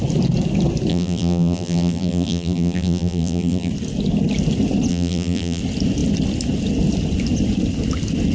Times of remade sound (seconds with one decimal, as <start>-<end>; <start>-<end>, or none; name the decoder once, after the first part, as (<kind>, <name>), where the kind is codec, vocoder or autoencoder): 0.9-3.7 (vocoder, BigVGAN v2); 4.9-5.6